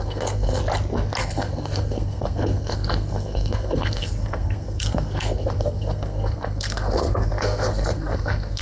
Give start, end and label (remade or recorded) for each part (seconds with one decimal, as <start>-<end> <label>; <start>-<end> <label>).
0.0-0.6 remade; 0.6-1.2 recorded; 1.2-8.6 remade